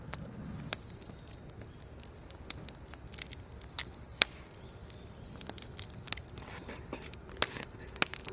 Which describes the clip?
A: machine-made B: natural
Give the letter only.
B